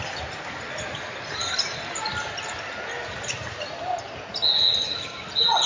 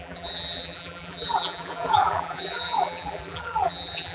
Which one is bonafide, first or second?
first